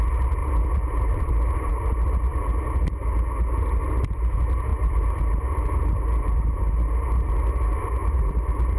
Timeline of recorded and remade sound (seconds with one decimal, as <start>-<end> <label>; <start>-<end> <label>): 0.0-0.4 recorded; 0.4-1.7 remade; 1.7-4.7 recorded; 4.7-5.2 remade; 5.2-8.0 recorded; 8.0-8.8 remade